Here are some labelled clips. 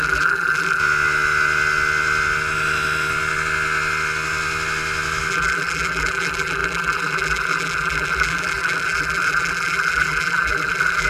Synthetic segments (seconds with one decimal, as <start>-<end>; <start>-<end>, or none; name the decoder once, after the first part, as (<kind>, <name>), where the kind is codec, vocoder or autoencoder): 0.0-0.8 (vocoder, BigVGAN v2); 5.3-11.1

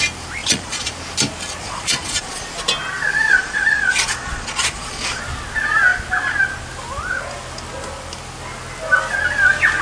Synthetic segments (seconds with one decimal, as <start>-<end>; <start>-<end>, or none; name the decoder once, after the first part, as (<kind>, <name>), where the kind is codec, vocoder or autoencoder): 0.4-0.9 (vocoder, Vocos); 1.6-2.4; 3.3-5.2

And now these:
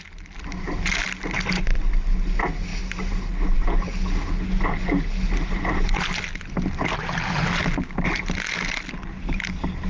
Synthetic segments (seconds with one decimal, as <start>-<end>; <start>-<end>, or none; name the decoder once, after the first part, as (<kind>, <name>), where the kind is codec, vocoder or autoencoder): none

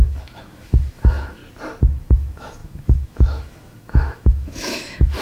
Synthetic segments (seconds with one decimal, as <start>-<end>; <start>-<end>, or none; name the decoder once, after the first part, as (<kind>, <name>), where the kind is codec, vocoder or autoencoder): 0.0-1.4 (autoencoder, DAC-VAE); 2.0-5.2

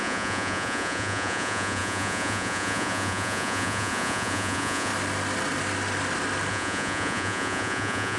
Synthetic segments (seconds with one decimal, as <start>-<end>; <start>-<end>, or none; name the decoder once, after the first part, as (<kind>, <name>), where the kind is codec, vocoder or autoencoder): 0.0-4.9 (vocoder, Vocos); 6.5-8.2

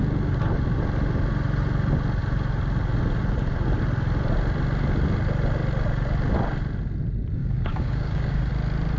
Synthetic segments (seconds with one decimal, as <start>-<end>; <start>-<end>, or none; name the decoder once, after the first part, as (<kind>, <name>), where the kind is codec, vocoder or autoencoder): 7.4-8.5 (codec, DAC)